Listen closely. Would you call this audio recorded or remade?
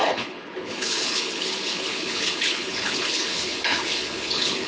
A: remade